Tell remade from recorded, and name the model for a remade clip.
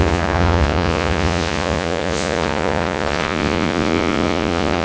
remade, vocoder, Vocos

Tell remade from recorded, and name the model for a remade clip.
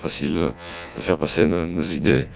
remade, vocoder, Vocos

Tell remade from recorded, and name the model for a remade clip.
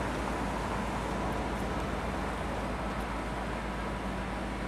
recorded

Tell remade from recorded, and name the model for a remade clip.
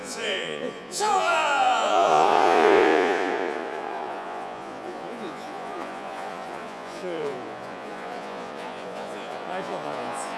remade, vocoder, Vocos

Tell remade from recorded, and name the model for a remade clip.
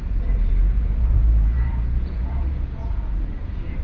remade, vocoder, Vocos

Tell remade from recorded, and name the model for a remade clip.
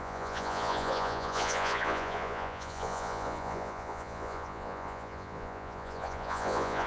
remade, vocoder, Vocos